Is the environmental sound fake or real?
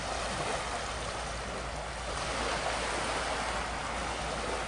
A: real